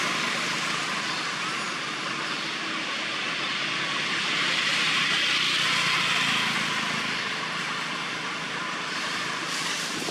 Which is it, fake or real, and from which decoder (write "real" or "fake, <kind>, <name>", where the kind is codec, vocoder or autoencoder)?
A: real